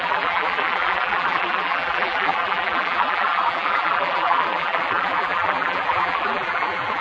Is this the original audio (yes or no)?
no